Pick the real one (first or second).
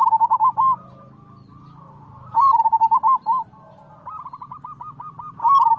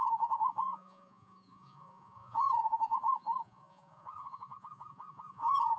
first